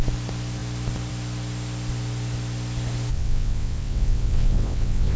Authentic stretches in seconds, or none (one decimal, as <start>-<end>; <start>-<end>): 0.0-3.1